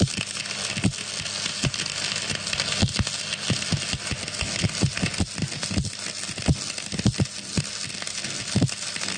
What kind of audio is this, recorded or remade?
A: recorded